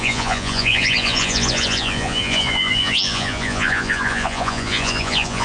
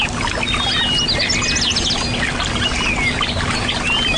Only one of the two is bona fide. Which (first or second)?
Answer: second